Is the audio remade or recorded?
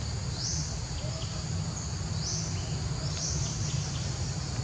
recorded